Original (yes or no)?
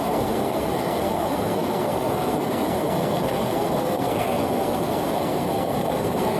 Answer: no